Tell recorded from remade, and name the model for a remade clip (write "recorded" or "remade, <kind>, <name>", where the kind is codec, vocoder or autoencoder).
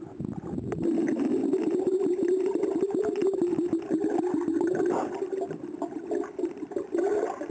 recorded